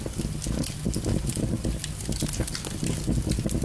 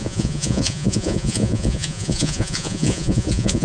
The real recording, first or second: first